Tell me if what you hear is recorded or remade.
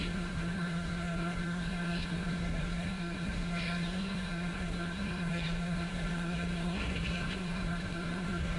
remade